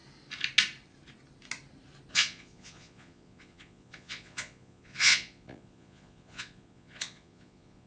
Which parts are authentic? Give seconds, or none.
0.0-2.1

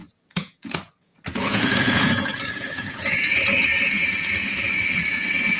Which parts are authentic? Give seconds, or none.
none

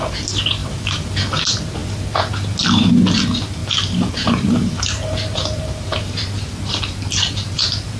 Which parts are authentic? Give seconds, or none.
0.0-0.6; 1.4-3.6